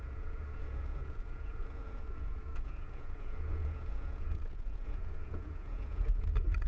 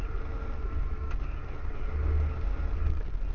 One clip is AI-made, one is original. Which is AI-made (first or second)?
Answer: first